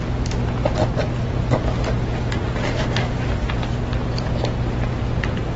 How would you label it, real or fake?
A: real